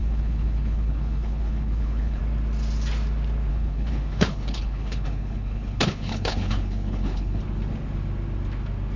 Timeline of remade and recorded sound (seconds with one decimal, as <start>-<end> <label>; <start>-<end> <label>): 0.0-2.2 remade; 2.2-3.5 recorded; 3.5-7.4 remade; 7.4-9.0 recorded